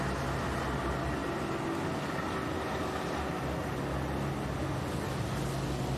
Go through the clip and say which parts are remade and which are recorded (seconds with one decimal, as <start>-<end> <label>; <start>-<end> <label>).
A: 0.0-6.0 recorded